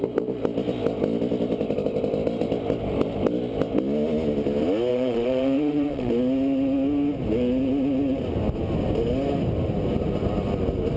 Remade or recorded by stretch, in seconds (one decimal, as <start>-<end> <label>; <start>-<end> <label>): 0.0-4.9 recorded; 4.9-6.1 remade; 6.1-11.0 recorded